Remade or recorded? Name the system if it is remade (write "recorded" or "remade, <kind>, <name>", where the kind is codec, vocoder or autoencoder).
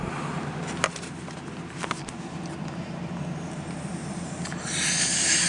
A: recorded